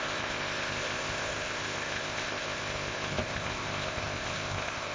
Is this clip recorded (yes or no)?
no